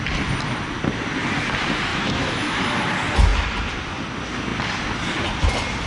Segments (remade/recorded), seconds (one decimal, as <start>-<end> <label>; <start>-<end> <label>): 0.0-1.9 recorded; 1.9-2.7 remade; 2.7-5.9 recorded